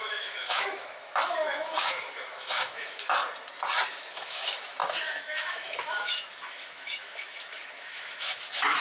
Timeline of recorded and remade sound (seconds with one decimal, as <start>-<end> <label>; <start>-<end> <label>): 0.0-3.2 remade; 3.2-3.9 recorded; 3.9-8.8 remade

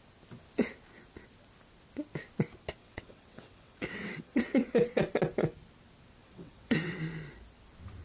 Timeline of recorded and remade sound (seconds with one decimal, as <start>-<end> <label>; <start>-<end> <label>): 0.0-2.8 recorded; 2.8-5.0 remade; 5.0-6.2 recorded; 6.2-7.0 remade; 7.0-8.0 recorded

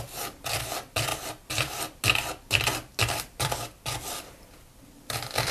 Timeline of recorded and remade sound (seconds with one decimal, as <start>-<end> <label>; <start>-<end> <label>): 0.0-1.1 remade; 1.1-3.1 recorded; 3.1-5.5 remade

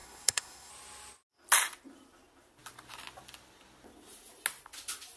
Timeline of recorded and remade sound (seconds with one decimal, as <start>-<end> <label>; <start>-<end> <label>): 0.0-0.7 remade; 0.7-5.2 recorded